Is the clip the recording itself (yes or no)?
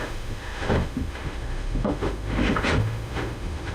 no